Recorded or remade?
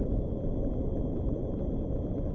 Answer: remade